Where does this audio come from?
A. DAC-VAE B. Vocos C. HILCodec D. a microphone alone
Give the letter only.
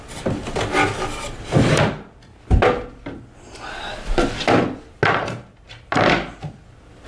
D